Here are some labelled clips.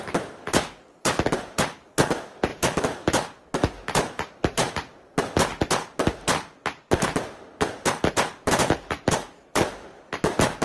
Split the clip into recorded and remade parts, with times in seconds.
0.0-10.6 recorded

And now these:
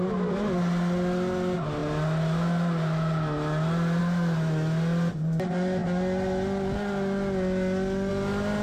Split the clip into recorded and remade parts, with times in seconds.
0.0-8.6 recorded

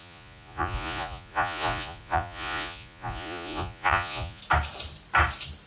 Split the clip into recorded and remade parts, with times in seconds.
0.0-4.4 remade; 4.4-5.7 recorded

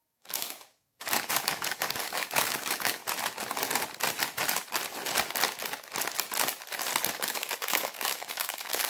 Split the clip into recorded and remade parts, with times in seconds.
0.0-3.0 remade; 3.0-7.1 recorded; 7.1-8.9 remade